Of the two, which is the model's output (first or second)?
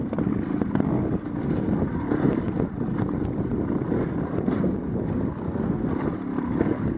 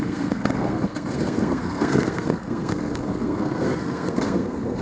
second